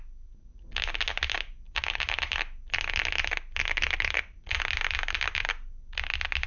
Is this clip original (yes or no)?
yes